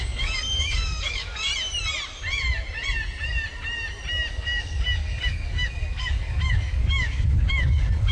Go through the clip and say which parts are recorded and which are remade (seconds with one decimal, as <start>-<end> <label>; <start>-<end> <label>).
0.0-1.5 remade; 1.5-4.3 recorded; 4.3-8.1 remade